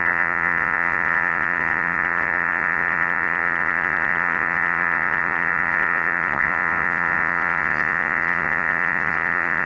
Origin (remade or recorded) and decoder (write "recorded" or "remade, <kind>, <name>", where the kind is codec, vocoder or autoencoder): remade, vocoder, Vocos